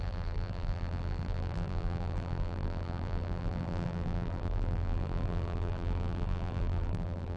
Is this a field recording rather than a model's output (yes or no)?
no